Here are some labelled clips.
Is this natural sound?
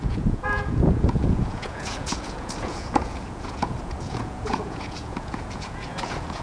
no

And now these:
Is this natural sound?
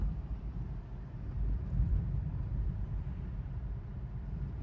no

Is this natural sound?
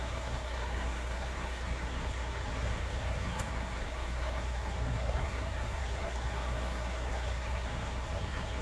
no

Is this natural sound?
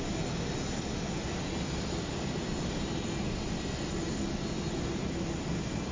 yes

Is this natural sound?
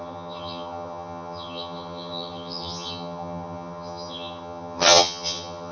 no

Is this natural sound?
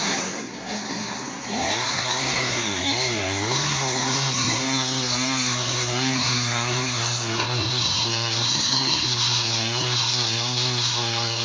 no